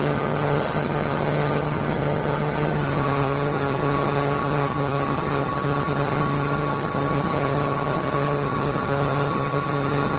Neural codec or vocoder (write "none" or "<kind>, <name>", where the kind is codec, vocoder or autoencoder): vocoder, HiFi-GAN